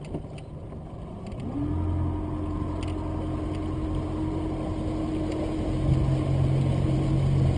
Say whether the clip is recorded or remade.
recorded